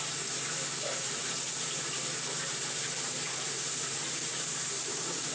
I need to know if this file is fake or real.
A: fake